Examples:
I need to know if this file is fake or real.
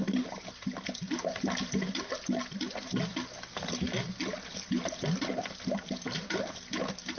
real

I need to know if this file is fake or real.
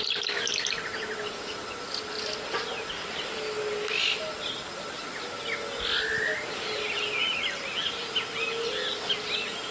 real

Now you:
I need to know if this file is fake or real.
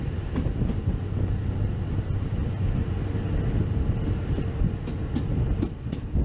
real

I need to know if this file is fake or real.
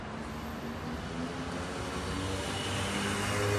real